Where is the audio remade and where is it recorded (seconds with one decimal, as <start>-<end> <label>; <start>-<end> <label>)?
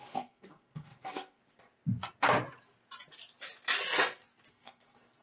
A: 0.0-1.4 remade; 1.4-4.5 recorded; 4.5-5.2 remade